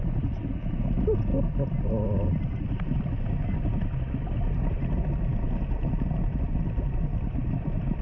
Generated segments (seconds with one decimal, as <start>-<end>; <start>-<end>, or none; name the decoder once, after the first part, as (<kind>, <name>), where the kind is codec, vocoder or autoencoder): none